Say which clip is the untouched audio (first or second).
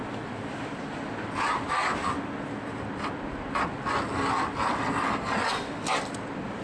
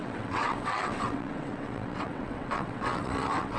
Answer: first